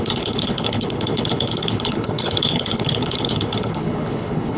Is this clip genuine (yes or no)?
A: no